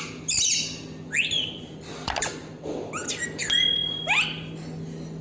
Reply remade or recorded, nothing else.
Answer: recorded